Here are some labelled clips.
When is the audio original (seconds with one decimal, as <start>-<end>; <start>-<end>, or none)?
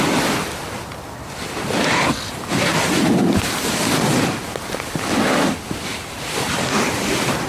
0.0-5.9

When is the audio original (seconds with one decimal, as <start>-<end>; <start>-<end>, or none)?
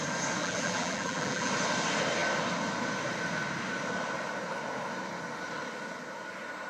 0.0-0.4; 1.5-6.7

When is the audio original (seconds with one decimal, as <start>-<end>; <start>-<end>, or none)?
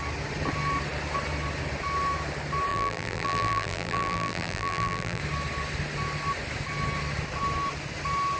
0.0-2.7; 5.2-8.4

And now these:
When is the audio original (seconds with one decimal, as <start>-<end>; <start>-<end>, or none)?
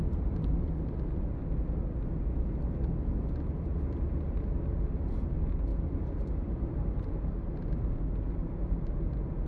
0.0-2.9; 4.1-5.7; 6.3-9.5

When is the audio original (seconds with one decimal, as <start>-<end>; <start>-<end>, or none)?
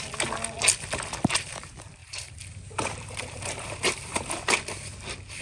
0.0-2.0; 4.4-5.4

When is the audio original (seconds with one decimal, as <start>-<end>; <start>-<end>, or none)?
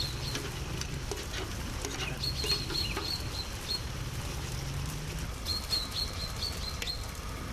0.0-7.5